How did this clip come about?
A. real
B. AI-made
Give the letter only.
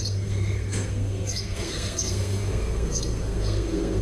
B